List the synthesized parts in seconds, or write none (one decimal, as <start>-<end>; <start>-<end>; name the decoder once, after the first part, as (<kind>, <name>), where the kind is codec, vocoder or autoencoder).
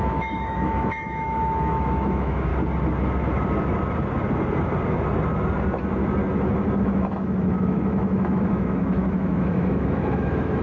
0.0-2.5 (autoencoder, DAC-VAE); 6.8-10.6